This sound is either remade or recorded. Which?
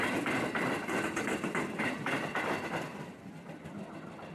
recorded